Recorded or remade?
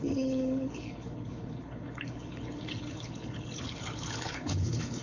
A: remade